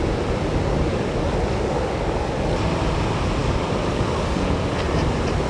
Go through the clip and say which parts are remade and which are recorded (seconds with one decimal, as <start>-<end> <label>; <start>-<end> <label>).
0.0-0.9 recorded; 0.9-2.3 remade; 2.3-3.4 recorded; 3.4-4.7 remade; 4.7-5.5 recorded